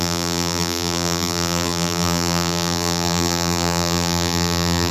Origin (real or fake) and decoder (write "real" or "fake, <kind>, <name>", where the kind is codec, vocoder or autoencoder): fake, vocoder, BigVGAN v2